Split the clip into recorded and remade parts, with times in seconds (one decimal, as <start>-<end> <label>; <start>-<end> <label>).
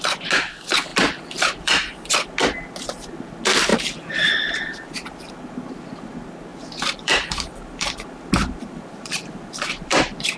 0.0-0.9 recorded; 0.9-2.1 remade; 2.1-3.7 recorded; 3.7-5.3 remade; 5.3-6.5 recorded; 6.5-10.4 remade